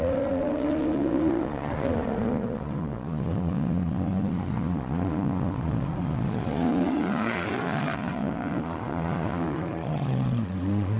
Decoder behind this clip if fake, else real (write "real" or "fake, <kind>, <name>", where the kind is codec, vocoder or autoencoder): fake, vocoder, Vocos